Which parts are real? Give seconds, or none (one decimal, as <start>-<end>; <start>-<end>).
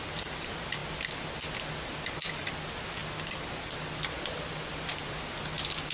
0.0-5.9